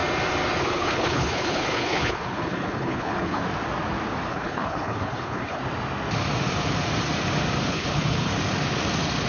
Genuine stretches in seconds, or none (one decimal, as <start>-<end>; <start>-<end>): 0.0-0.6; 3.4-4.3; 5.6-7.6; 8.3-9.3